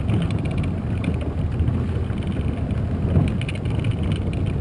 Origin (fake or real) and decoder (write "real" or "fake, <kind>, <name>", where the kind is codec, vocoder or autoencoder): real